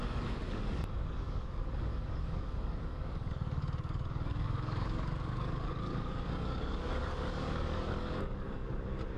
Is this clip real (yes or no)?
no